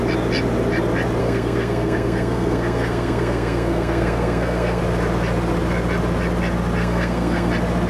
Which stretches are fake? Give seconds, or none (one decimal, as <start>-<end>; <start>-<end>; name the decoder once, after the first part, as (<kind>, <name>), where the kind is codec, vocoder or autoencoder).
1.2-4.8 (codec, SNAC); 6.8-7.5